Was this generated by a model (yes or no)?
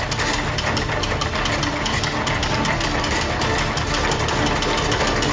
no